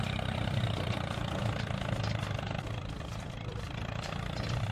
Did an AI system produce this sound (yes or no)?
yes